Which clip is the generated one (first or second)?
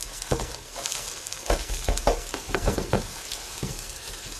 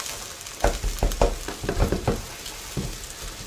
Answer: first